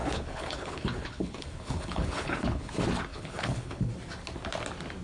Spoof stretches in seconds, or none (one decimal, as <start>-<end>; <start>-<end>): 0.0-2.7; 3.1-3.9